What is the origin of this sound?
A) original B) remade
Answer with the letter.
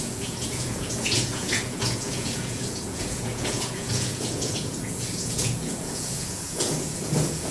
B